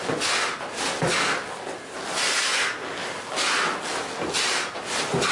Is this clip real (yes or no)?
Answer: yes